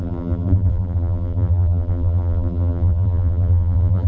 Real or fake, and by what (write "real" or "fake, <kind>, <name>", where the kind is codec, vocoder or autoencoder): fake, vocoder, BigVGAN v2